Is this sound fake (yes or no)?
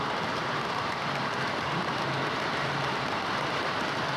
yes